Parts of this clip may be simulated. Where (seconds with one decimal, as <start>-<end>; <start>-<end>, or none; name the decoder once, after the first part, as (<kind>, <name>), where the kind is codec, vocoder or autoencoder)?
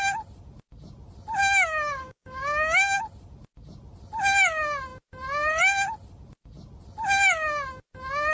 1.4-3.0 (codec, DAC)